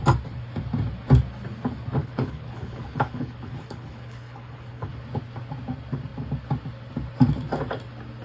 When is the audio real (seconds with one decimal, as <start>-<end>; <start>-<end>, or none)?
0.0-2.0; 4.9-8.2